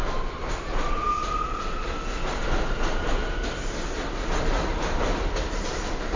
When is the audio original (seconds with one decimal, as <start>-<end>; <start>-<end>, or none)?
0.0-6.2